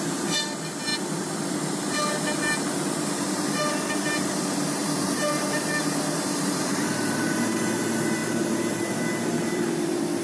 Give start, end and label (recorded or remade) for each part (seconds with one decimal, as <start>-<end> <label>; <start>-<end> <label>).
0.0-10.2 remade

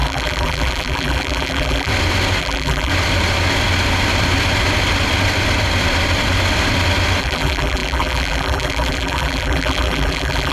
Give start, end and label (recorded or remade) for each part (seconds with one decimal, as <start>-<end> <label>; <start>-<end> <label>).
0.0-1.9 remade; 1.9-2.4 recorded; 2.4-2.9 remade; 2.9-7.2 recorded; 7.2-10.5 remade